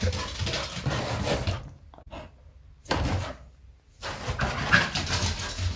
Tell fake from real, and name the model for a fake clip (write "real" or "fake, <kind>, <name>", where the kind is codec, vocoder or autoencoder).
real